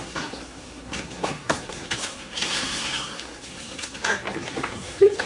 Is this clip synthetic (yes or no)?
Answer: yes